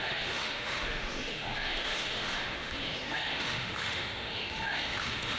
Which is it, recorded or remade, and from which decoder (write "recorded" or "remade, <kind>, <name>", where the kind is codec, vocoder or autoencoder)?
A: remade, autoencoder, DAC-VAE